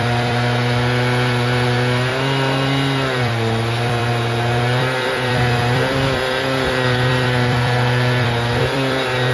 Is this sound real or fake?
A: fake